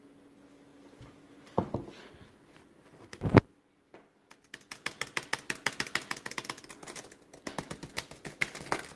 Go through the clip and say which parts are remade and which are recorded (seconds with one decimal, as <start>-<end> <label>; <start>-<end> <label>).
0.0-9.0 recorded